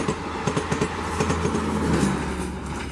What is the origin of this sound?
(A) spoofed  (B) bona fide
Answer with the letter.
B